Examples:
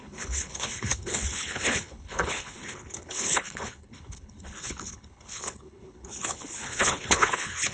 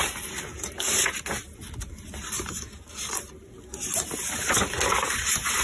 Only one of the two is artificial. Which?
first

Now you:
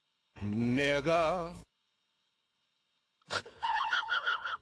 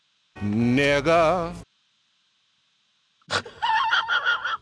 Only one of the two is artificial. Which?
first